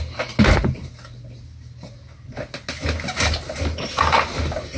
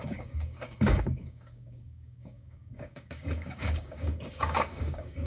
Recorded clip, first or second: first